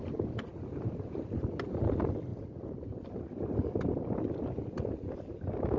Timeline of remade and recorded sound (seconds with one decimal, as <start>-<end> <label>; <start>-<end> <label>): 0.0-5.8 recorded